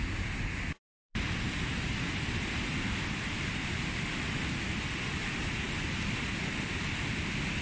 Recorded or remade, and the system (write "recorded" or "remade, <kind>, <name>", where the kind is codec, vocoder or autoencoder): recorded